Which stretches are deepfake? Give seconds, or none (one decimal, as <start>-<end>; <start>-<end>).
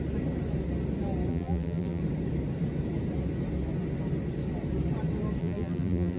1.3-2.0; 5.4-6.2